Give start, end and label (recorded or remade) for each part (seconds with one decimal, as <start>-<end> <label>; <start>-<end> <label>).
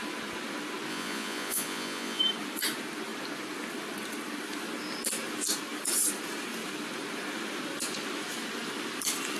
0.0-0.9 recorded; 0.9-2.2 remade; 2.2-9.4 recorded